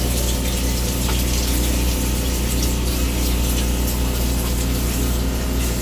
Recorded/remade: recorded